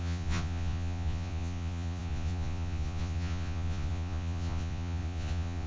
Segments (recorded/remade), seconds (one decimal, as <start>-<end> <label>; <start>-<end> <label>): 0.0-5.7 remade